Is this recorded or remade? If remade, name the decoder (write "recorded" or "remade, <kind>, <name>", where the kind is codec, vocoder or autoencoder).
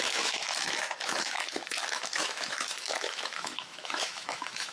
remade, autoencoder, DAC-VAE